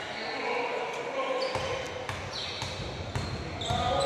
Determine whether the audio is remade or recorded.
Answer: recorded